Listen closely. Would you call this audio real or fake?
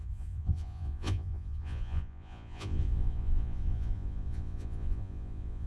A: fake